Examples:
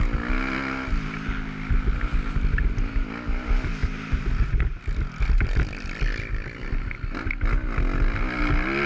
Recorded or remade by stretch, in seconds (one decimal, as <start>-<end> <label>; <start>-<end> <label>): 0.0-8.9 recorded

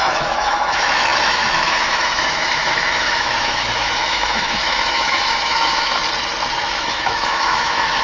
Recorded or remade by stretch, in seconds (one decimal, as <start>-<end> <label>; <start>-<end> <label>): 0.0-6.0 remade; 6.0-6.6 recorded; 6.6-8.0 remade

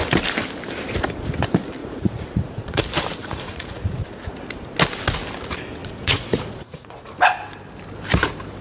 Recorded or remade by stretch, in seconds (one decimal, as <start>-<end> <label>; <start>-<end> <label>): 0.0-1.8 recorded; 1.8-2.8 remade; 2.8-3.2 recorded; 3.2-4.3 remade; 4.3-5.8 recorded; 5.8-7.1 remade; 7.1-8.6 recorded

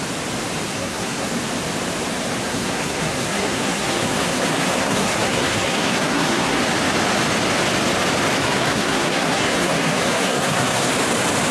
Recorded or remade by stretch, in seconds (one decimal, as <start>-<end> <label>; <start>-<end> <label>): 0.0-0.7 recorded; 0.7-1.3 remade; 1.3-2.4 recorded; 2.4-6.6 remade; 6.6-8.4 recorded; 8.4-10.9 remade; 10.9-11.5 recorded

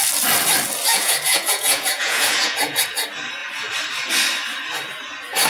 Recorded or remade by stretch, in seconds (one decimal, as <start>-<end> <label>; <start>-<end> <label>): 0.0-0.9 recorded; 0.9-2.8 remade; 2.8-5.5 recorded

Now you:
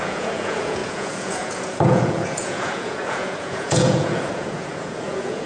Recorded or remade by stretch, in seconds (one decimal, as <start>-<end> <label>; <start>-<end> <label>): 0.0-5.5 remade

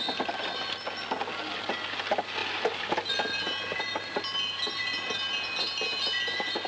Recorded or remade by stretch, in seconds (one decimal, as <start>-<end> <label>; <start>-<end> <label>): 0.0-6.7 recorded